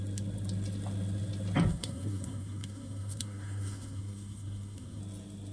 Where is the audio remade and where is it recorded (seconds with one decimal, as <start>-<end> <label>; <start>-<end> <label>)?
0.0-1.7 recorded; 1.7-5.0 remade; 5.0-5.5 recorded